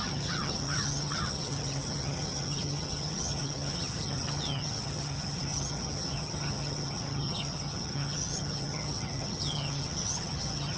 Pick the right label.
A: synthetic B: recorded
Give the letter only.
A